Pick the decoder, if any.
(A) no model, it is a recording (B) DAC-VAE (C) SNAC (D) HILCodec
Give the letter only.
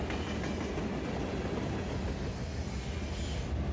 A